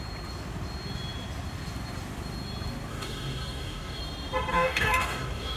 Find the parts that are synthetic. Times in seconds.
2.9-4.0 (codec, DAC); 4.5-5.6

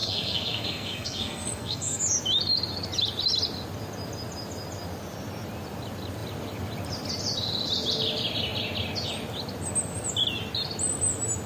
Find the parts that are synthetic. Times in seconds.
0.0-2.0 (codec, SNAC)